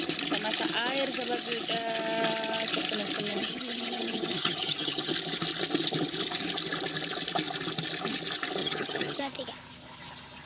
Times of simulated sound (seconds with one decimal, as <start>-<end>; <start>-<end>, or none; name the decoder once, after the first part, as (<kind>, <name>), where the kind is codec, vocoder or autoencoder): 3.3-5.1 (vocoder, HiFi-GAN); 8.6-9.2